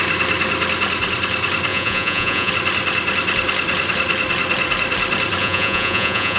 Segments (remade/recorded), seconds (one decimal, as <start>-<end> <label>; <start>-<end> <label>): 0.0-1.7 recorded; 1.7-2.5 remade; 2.5-5.4 recorded; 5.4-6.4 remade